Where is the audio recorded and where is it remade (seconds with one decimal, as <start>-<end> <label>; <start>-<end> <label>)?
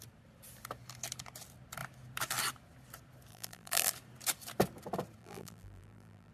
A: 0.0-3.3 recorded; 3.3-3.9 remade; 3.9-5.2 recorded; 5.2-6.3 remade